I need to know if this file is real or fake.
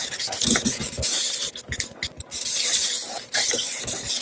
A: real